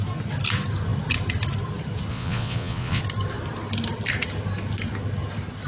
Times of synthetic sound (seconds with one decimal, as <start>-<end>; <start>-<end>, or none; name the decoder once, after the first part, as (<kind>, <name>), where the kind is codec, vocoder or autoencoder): 2.1-3.0 (vocoder, Vocos)